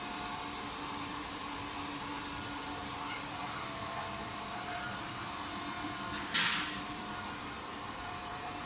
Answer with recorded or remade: remade